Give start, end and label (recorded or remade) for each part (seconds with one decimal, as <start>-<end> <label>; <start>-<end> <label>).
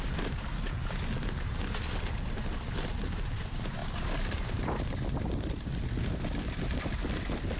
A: 0.0-3.8 recorded; 3.8-7.6 remade